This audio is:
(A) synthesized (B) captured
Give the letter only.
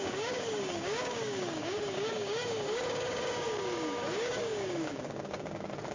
A